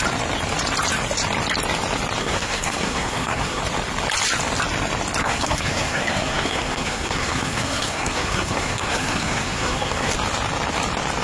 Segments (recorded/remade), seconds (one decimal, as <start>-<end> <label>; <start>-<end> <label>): 0.0-2.2 recorded; 2.2-3.6 remade; 3.6-5.2 recorded; 5.2-10.1 remade; 10.1-11.2 recorded